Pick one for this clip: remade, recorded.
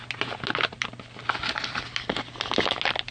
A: recorded